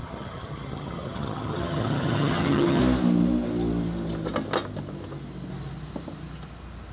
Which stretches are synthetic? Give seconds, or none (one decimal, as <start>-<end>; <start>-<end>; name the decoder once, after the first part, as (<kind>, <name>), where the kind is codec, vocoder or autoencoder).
0.0-2.8 (vocoder, HiFi-GAN)